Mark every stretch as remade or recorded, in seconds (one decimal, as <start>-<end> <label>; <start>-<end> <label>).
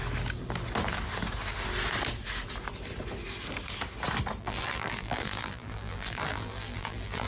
0.0-4.4 recorded; 4.4-7.3 remade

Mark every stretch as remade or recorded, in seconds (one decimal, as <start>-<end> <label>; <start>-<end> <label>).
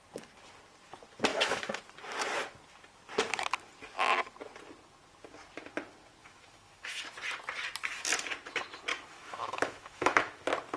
0.0-1.3 recorded; 1.3-1.8 remade; 1.8-6.2 recorded; 6.2-7.0 remade; 7.0-8.9 recorded; 8.9-10.4 remade; 10.4-10.8 recorded